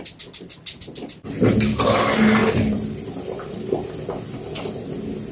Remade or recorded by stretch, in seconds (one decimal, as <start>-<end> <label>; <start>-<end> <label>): 0.0-2.4 recorded; 2.4-4.1 remade; 4.1-5.3 recorded